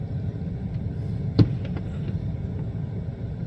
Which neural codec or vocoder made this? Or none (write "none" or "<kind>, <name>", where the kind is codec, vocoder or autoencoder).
none